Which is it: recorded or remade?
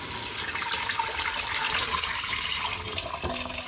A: recorded